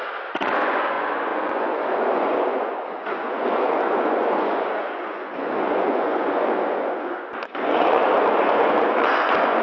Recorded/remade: remade